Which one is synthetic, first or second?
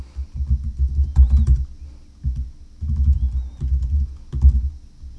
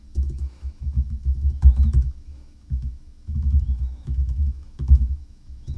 second